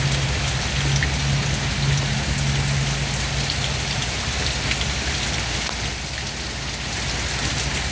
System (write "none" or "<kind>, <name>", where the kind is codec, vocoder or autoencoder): none